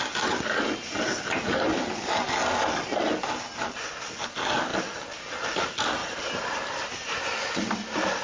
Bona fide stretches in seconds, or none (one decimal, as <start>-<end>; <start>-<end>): 0.0-6.0; 7.4-8.2